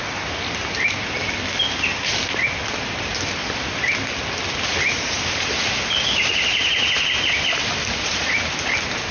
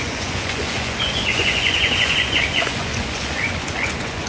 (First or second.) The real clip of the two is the first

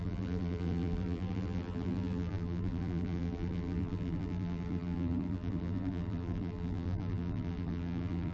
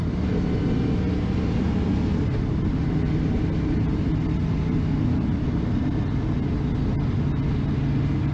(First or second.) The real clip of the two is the second